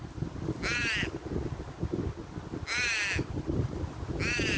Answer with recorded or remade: recorded